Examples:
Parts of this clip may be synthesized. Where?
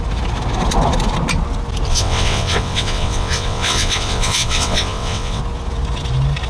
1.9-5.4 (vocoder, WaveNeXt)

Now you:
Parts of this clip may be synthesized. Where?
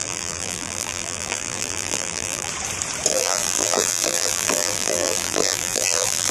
0.0-2.5 (vocoder, BigVGAN v2); 3.1-6.3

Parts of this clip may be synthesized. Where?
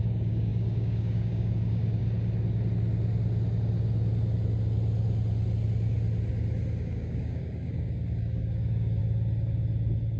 0.0-2.0 (codec, DAC); 6.8-9.0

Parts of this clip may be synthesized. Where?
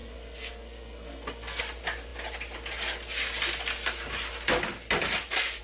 0.0-1.6 (codec, SNAC)